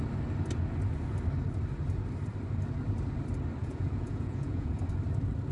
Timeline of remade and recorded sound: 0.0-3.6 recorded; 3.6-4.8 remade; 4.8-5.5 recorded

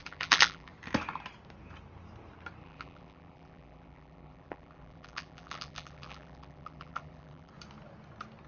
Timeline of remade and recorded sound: 0.0-0.7 remade; 0.7-2.6 recorded; 2.6-7.5 remade; 7.5-8.5 recorded

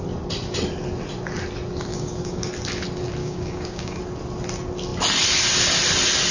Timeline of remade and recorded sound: 0.0-1.9 recorded; 1.9-2.5 remade; 2.5-3.2 recorded; 3.2-4.0 remade; 4.0-6.3 recorded

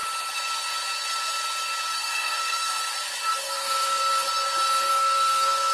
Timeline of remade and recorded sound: 0.0-1.9 recorded; 1.9-2.8 remade; 2.8-3.4 recorded; 3.4-4.0 remade; 4.0-4.9 recorded; 4.9-5.7 remade

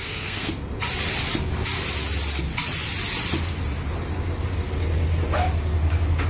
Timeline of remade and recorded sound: 0.0-0.5 remade; 0.5-6.3 recorded

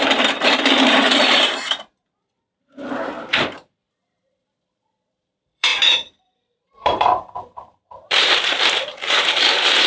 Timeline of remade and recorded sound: 0.0-9.9 remade